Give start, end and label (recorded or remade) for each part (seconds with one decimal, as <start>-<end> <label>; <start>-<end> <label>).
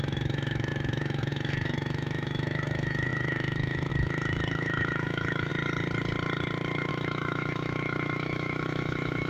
0.0-5.5 remade; 5.5-6.9 recorded; 6.9-9.3 remade